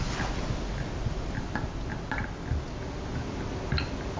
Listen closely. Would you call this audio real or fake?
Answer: real